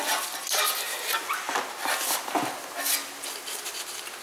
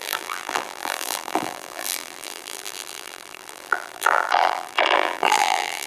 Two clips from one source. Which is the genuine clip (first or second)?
first